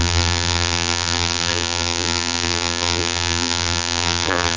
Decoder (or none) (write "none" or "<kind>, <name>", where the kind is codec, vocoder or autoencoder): vocoder, BigVGAN v2